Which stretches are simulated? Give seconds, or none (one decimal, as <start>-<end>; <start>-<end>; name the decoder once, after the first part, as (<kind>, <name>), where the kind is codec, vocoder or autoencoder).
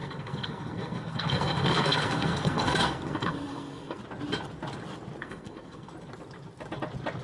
0.0-4.0 (codec, SNAC); 5.2-5.9